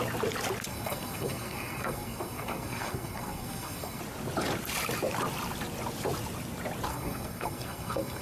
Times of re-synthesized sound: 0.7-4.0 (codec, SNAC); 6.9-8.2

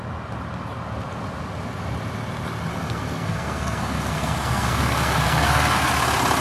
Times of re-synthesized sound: 2.7-5.9 (codec, SNAC)

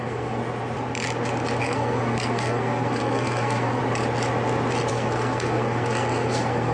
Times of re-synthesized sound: 0.0-0.4 (codec, SNAC); 1.6-3.8; 4.9-6.7